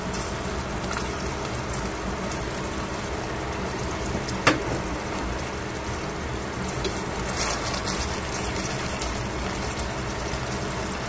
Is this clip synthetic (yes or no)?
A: no